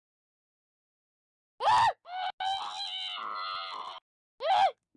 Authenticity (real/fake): real